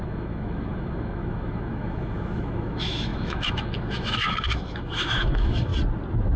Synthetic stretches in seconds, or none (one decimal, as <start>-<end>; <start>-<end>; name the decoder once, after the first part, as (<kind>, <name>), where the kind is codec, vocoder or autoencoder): 0.0-5.7 (autoencoder, DAC-VAE)